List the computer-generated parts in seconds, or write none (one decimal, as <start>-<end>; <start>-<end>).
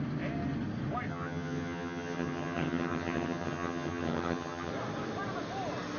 1.1-4.7